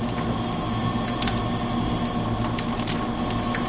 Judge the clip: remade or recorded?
recorded